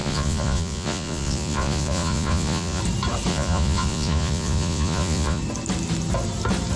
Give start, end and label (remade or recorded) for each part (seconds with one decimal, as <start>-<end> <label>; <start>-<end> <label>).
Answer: 0.0-2.8 remade; 2.8-3.3 recorded; 3.3-5.4 remade; 5.4-6.8 recorded